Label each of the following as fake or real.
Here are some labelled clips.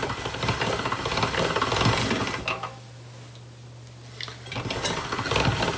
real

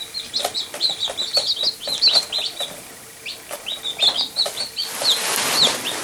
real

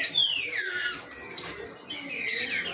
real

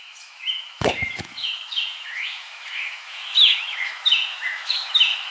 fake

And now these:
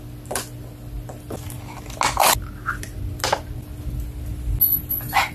real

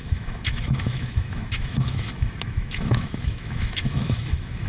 fake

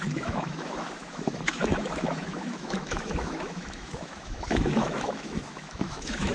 fake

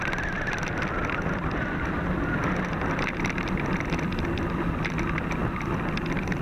real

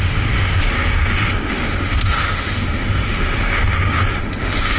fake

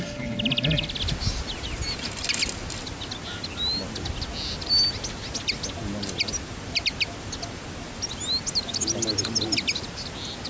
real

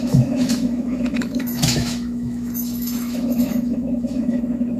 fake